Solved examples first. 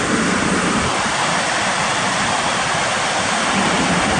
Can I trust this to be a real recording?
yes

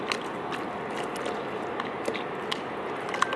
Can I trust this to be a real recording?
yes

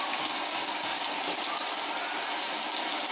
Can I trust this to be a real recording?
yes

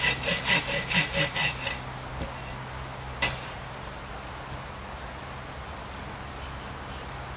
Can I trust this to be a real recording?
yes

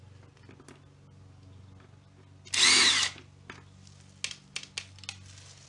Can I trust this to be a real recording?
yes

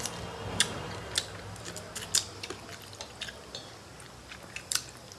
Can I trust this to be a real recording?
yes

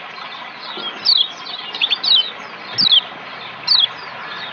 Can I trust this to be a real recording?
yes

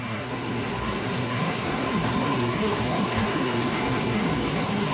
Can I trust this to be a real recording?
no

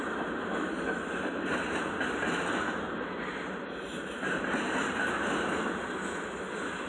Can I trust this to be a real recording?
yes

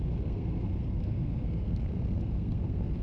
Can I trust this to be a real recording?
no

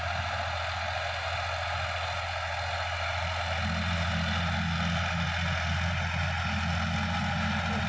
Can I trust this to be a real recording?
yes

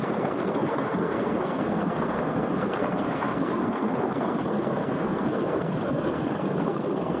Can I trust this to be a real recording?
no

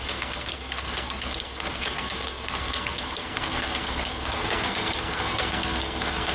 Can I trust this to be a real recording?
no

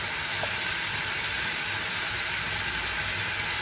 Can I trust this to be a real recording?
yes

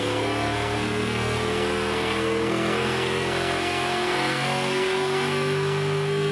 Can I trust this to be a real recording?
no